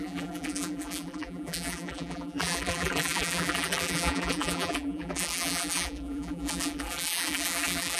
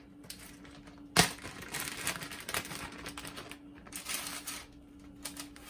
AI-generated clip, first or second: first